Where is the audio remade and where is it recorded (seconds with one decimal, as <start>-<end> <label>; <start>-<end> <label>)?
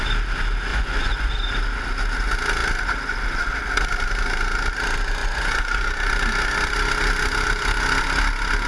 0.0-0.7 recorded; 0.7-1.3 remade; 1.3-5.2 recorded; 5.2-5.8 remade; 5.8-8.7 recorded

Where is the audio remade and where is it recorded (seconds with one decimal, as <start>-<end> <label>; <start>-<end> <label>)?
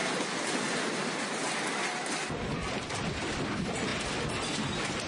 0.0-5.1 recorded